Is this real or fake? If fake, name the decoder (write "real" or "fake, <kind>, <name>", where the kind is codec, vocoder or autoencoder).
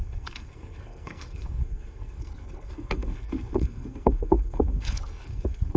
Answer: fake, codec, SNAC